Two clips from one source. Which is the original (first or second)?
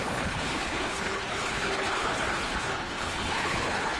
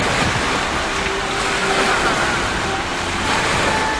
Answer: second